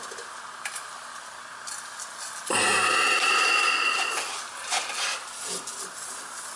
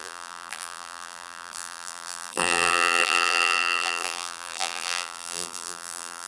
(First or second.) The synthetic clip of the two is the second